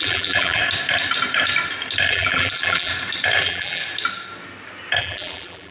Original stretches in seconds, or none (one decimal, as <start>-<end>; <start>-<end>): 0.6-2.1; 2.9-3.4; 3.8-5.0